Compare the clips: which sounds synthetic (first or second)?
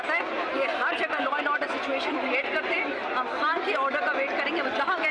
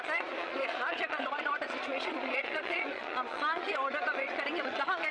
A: second